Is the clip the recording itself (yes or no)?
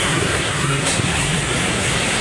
no